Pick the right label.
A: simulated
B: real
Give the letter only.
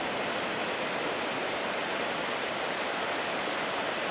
B